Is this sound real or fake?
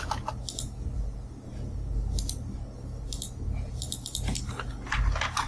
real